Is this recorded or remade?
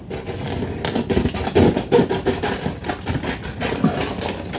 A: recorded